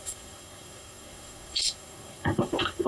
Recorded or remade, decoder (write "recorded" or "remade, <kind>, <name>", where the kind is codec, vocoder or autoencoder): remade, codec, SNAC